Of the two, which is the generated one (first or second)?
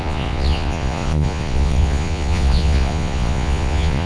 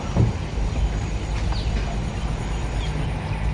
first